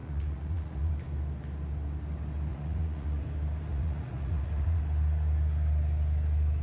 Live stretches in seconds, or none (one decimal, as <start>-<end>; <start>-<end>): 0.9-2.5; 3.2-3.7; 4.8-6.6